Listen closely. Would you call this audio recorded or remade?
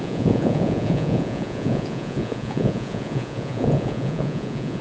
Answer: remade